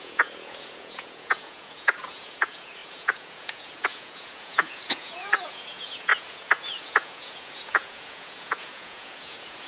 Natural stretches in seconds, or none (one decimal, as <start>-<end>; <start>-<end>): none